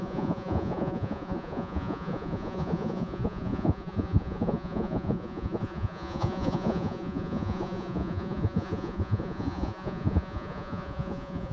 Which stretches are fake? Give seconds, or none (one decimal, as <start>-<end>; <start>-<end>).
0.0-11.5